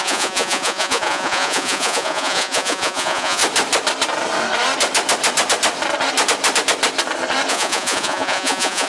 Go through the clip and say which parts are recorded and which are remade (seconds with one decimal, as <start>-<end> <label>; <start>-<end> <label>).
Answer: 0.0-3.4 remade; 3.4-7.5 recorded; 7.5-8.9 remade